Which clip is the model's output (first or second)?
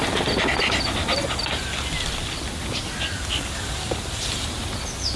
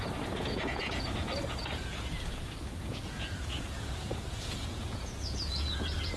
second